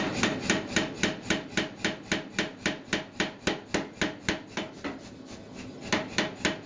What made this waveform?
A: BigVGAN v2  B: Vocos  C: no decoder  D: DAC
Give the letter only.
C